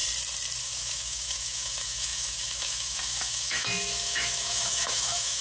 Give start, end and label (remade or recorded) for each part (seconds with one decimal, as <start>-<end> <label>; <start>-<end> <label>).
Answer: 0.0-0.6 recorded; 0.6-5.4 remade

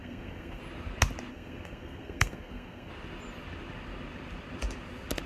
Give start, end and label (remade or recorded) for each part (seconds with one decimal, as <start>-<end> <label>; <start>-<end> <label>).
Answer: 0.0-0.6 remade; 0.6-1.3 recorded; 1.3-2.9 remade; 2.9-5.3 recorded

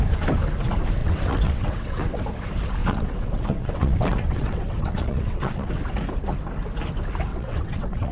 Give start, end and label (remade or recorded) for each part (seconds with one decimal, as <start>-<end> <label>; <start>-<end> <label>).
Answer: 0.0-1.0 recorded; 1.0-2.2 remade; 2.2-2.8 recorded; 2.8-5.7 remade; 5.7-7.3 recorded; 7.3-8.1 remade

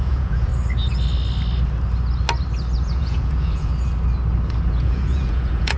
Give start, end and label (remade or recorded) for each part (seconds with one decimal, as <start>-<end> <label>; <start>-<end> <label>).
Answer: 0.0-0.5 remade; 0.5-2.8 recorded; 2.8-3.7 remade; 3.7-4.7 recorded; 4.7-5.8 remade

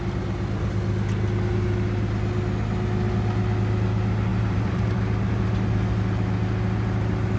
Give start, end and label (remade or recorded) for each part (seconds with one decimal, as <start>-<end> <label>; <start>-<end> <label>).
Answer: 0.0-4.3 recorded; 4.3-5.4 remade; 5.4-7.4 recorded

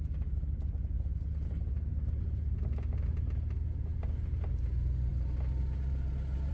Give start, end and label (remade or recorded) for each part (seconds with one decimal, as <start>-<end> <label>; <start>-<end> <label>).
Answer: 0.0-1.9 recorded; 1.9-2.8 remade; 2.8-6.5 recorded

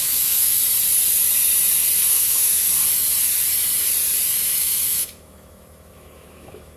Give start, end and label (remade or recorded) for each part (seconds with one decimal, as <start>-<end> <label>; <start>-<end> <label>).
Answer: 0.0-0.6 remade; 0.6-2.1 recorded; 2.1-2.7 remade; 2.7-4.6 recorded; 4.6-6.8 remade

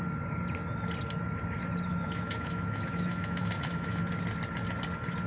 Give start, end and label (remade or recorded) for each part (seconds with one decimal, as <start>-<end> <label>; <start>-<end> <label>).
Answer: 0.0-1.9 recorded; 1.9-4.0 remade; 4.0-5.3 recorded